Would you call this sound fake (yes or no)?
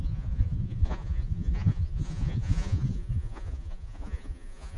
yes